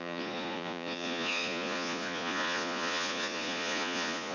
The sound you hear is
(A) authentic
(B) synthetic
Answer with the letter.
B